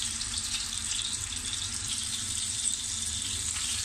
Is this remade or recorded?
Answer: remade